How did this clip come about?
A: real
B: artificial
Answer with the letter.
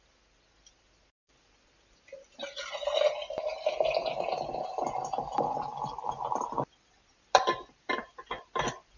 A